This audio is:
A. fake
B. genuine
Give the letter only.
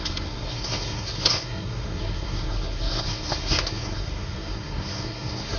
A